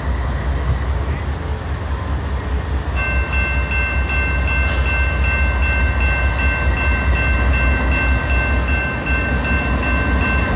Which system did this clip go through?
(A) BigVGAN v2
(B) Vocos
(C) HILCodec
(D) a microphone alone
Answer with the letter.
D